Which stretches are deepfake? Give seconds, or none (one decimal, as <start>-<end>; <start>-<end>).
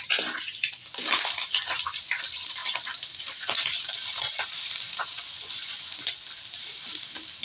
5.1-6.3